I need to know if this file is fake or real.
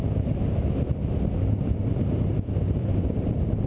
real